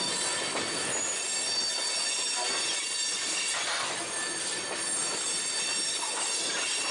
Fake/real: real